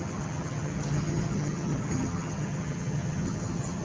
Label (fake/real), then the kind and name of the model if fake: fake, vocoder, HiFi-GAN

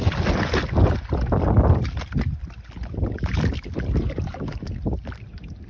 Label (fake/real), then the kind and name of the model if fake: real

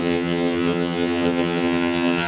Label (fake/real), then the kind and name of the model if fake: fake, vocoder, HiFi-GAN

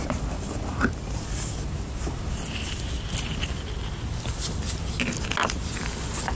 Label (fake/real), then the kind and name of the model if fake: real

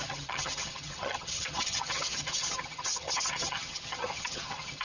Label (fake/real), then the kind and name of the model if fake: fake, vocoder, HiFi-GAN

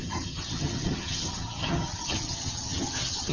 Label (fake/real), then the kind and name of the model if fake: fake, vocoder, HiFi-GAN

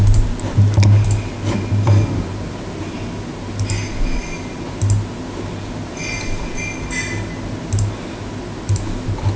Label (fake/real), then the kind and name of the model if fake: real